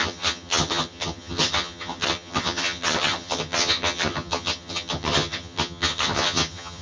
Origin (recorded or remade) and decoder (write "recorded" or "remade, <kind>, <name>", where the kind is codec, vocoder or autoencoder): remade, vocoder, HiFi-GAN